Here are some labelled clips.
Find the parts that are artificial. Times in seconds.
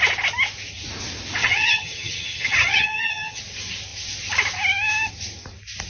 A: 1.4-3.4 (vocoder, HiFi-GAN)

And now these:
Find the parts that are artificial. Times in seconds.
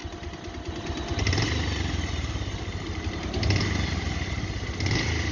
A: none